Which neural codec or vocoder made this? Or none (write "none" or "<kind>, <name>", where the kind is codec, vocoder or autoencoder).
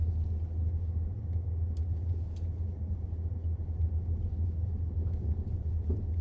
none